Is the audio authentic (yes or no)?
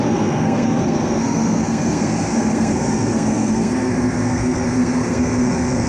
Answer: no